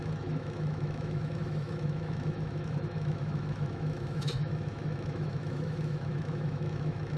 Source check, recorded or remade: remade